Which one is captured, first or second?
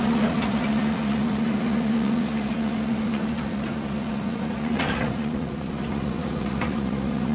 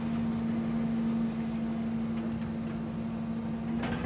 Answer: second